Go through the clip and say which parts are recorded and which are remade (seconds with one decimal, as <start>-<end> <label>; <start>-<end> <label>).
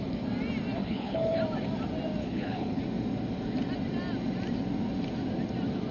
0.0-0.8 recorded; 0.8-1.4 remade; 1.4-2.2 recorded; 2.2-2.8 remade; 2.8-5.9 recorded